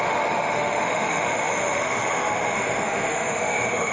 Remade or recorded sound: remade